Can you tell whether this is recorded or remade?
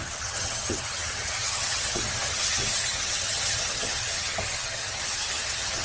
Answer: remade